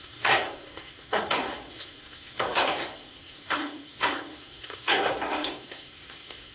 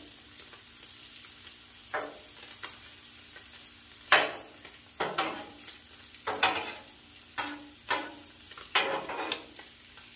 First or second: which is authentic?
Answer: second